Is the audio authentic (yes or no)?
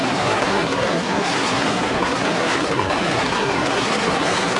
no